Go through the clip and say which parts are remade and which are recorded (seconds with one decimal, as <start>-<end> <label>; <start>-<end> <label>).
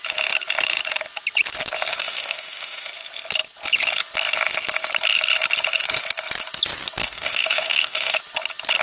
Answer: 0.0-1.9 recorded; 1.9-2.9 remade; 2.9-7.0 recorded; 7.0-8.2 remade; 8.2-8.8 recorded